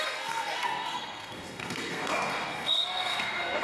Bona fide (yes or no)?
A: no